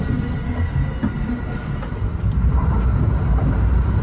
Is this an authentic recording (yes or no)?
yes